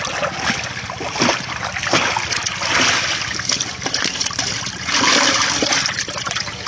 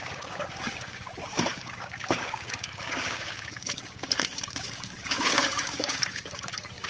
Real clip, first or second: first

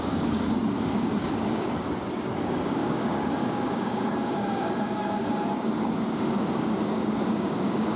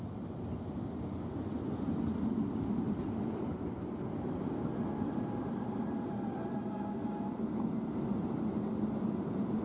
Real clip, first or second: second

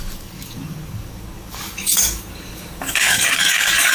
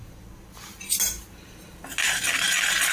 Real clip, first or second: second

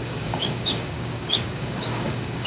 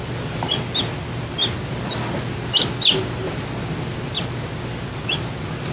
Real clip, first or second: second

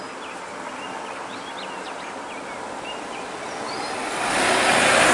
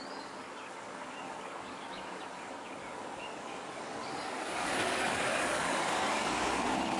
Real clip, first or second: first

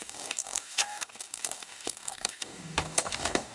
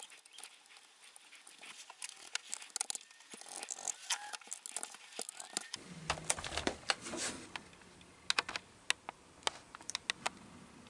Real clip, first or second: second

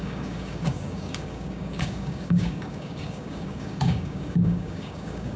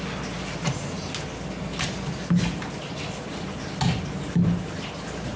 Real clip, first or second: second